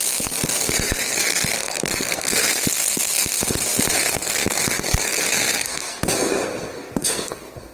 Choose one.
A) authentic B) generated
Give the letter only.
B